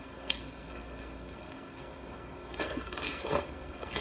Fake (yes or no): yes